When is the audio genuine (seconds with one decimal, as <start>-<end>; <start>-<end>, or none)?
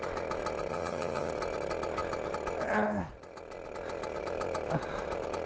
0.0-0.7; 1.3-5.5